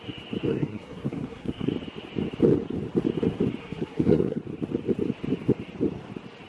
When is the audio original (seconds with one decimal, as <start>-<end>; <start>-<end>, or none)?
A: 0.0-0.5; 1.7-3.6; 4.4-6.5